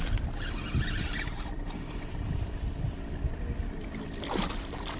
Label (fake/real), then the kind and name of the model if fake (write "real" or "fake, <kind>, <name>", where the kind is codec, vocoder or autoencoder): real